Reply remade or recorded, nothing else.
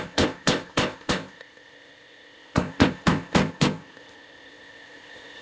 remade